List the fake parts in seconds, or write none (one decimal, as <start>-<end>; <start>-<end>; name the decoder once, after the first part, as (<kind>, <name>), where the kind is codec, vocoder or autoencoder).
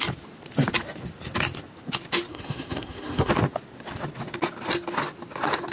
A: 2.3-3.3 (codec, SNAC)